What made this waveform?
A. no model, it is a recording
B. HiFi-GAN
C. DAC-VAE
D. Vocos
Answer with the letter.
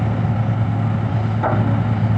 A